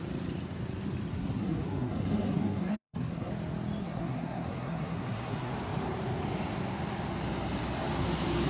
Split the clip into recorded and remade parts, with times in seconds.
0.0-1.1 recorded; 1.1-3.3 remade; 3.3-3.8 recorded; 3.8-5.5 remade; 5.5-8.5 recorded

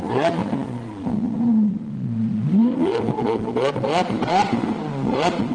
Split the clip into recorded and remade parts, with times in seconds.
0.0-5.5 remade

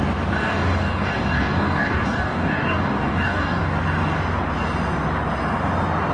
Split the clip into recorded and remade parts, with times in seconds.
0.0-0.4 recorded; 0.4-3.6 remade; 3.6-6.1 recorded

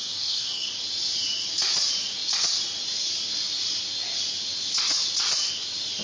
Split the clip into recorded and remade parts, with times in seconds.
0.0-0.7 remade; 0.7-6.0 recorded

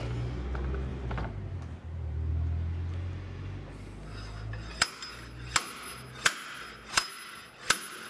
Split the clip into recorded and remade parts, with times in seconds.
0.0-8.1 recorded

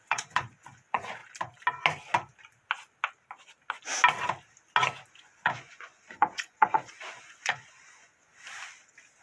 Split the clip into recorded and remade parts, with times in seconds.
0.0-1.2 remade; 1.2-5.1 recorded; 5.1-8.3 remade; 8.3-9.2 recorded